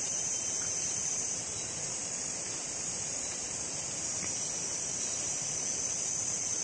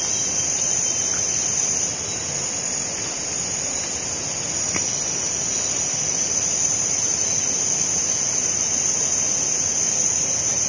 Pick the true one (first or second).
second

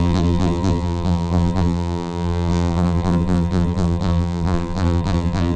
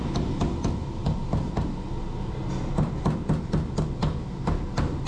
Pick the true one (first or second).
second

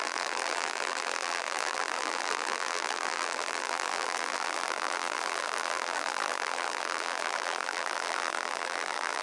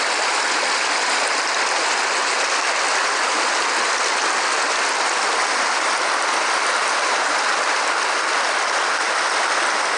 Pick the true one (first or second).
second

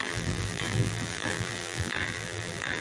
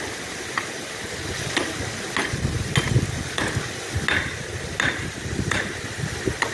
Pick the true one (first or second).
second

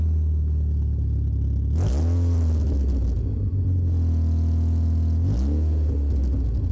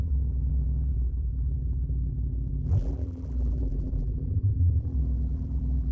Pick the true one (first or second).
first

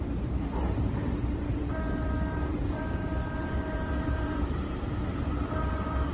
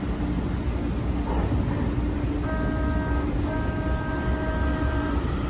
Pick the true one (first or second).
second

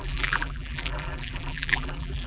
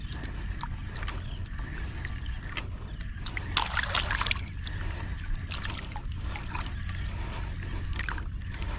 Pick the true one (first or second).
second